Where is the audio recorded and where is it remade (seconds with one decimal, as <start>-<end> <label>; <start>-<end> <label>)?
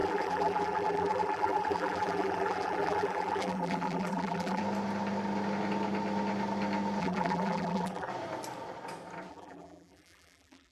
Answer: 0.0-4.6 remade; 4.6-7.0 recorded; 7.0-8.1 remade; 8.1-9.3 recorded; 9.3-10.7 remade